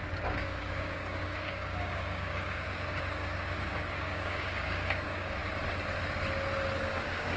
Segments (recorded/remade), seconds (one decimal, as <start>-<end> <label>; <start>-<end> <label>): 0.0-5.4 remade; 5.4-6.8 recorded; 6.8-7.4 remade